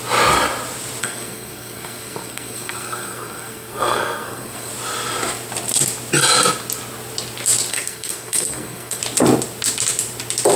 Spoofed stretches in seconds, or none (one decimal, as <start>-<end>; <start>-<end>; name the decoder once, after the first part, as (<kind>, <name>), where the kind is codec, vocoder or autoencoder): 1.0-4.7 (codec, SNAC); 7.7-9.0